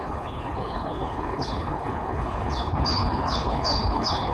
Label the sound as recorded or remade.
remade